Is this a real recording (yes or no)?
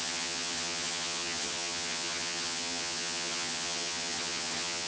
no